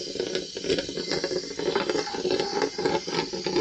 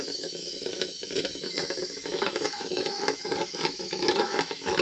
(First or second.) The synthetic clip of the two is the second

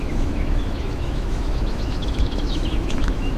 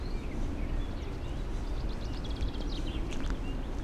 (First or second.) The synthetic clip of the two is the first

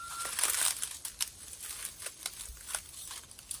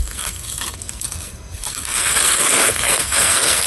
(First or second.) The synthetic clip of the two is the second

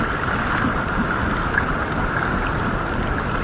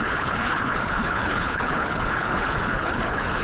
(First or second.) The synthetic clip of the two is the second